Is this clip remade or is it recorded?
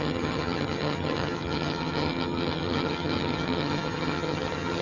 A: remade